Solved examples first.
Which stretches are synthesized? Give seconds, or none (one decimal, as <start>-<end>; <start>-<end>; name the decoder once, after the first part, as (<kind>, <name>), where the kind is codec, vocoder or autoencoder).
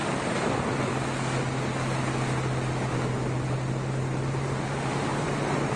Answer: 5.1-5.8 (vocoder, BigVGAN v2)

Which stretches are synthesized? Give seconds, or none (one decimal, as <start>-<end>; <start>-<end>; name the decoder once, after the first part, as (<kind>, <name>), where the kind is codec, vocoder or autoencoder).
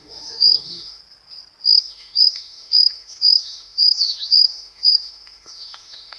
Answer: 0.0-1.0 (autoencoder, DAC-VAE); 1.8-6.2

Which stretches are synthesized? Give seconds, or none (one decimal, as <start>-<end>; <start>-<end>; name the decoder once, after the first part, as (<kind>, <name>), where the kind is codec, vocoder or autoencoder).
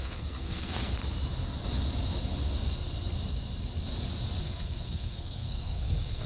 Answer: 0.0-0.9 (codec, SNAC); 4.4-6.3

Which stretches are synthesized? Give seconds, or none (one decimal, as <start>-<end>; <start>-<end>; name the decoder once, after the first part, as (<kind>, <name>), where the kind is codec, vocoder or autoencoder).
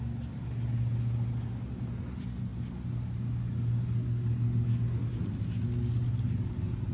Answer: none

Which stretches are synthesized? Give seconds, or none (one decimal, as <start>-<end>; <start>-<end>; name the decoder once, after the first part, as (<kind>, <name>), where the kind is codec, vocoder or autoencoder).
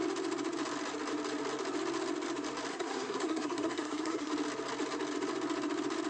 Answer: 2.7-4.3 (codec, SNAC)